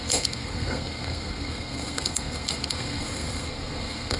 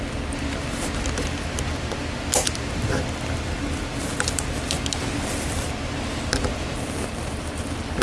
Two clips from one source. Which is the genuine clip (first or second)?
second